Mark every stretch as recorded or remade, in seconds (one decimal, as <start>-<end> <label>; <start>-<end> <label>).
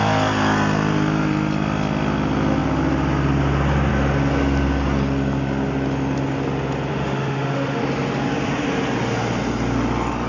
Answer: 0.0-6.9 recorded; 6.9-7.8 remade; 7.8-10.3 recorded